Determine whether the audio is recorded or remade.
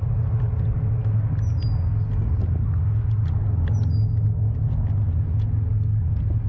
recorded